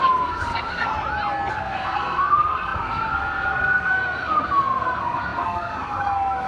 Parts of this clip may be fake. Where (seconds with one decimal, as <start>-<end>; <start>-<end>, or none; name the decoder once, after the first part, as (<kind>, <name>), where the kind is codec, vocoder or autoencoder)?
0.0-0.9 (codec, SNAC); 1.5-6.5